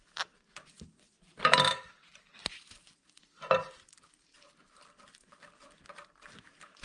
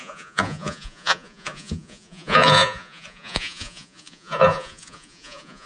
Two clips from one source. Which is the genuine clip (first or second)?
first